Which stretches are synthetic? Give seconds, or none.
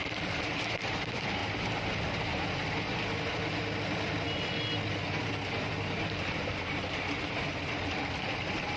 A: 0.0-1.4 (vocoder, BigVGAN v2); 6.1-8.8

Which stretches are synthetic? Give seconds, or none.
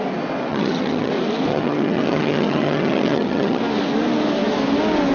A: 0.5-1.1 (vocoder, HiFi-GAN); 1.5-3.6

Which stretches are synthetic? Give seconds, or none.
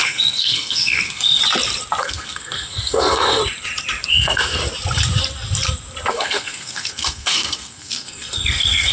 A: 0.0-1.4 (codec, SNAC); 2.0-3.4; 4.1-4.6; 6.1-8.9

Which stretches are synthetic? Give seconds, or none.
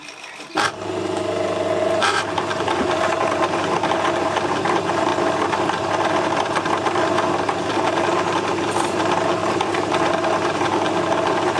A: 0.0-5.1 (vocoder, BigVGAN v2); 7.7-11.6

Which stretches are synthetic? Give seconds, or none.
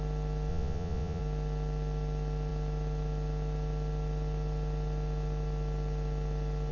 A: 0.5-1.2 (vocoder, Vocos)